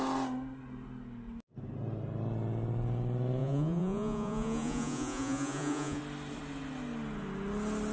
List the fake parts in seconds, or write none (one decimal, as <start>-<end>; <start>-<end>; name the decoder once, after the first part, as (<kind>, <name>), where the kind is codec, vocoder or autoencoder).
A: 3.4-6.0 (vocoder, Vocos)